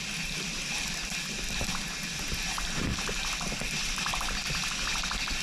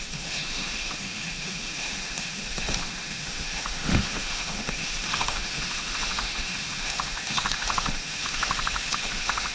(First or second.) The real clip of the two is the first